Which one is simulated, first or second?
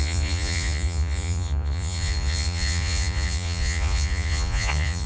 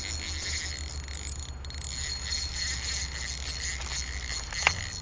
first